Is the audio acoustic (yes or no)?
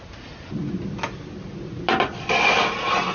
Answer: yes